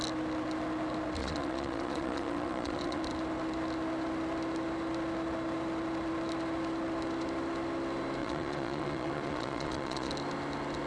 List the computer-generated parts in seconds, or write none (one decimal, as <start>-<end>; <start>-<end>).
1.2-3.0; 8.2-10.1